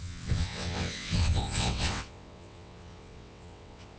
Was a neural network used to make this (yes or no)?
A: yes